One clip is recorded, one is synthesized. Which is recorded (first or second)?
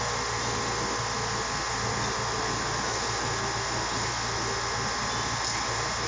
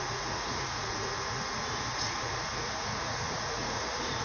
first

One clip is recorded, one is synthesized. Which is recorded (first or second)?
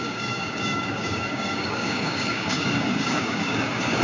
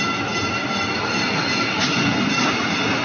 second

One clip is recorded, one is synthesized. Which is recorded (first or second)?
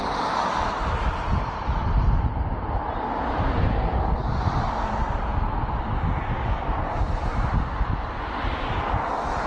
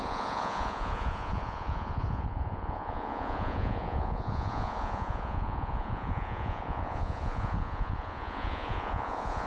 first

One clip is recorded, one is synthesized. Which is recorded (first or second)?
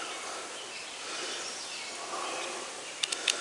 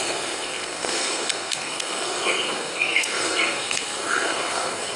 first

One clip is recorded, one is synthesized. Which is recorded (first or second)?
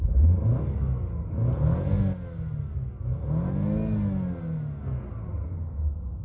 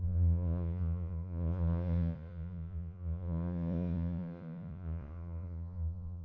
first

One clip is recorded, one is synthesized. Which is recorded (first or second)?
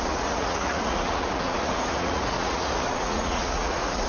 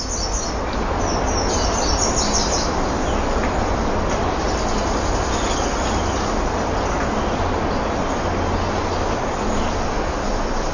second